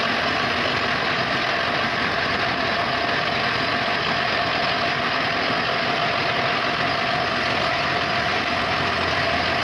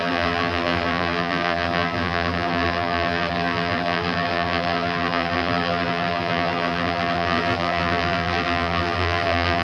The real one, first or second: first